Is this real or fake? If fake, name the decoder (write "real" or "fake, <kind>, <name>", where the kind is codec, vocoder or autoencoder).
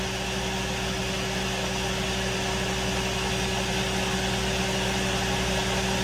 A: real